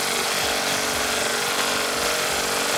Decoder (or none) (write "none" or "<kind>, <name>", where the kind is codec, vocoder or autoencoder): none